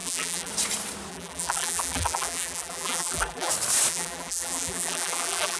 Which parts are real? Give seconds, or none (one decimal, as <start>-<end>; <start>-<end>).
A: 0.5-1.1; 3.5-3.9